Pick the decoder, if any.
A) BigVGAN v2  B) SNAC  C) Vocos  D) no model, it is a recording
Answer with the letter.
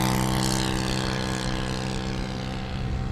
D